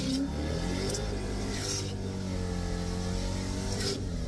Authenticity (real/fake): real